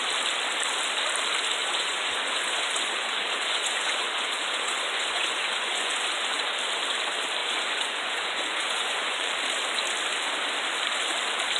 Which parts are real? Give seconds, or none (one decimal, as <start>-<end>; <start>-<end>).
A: 0.0-1.6; 6.4-7.4; 9.3-11.6

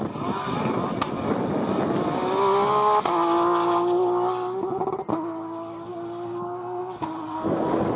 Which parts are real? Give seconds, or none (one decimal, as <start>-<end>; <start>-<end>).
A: 0.0-8.0

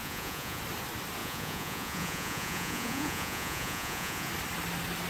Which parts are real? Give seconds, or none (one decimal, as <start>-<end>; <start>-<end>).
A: 0.6-1.2; 4.3-5.1

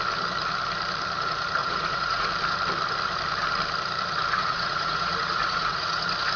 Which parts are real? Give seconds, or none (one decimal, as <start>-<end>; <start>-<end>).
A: 0.0-1.6; 2.3-4.4; 6.0-6.4